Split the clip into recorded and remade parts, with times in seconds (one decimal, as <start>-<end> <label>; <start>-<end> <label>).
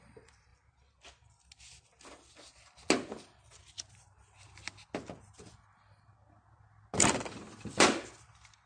0.0-8.7 recorded